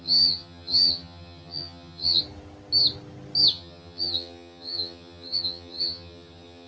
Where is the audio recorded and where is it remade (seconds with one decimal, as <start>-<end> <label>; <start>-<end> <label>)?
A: 0.0-2.2 remade; 2.2-3.5 recorded; 3.5-6.7 remade